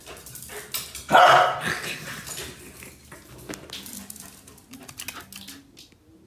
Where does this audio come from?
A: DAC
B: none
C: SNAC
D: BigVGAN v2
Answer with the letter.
B